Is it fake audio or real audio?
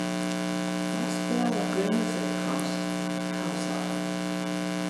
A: real